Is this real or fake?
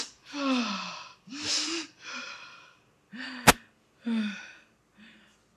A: real